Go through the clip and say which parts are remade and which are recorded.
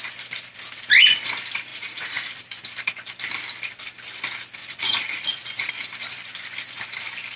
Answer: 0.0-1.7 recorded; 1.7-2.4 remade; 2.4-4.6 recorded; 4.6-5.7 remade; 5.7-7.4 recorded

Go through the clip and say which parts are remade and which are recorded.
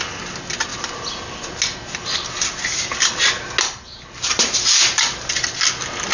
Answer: 0.0-6.1 recorded